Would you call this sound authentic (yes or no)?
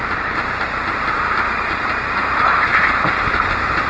yes